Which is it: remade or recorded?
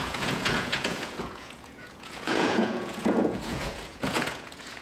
remade